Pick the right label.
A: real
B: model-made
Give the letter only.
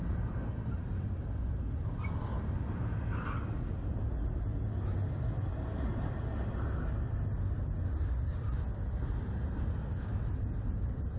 A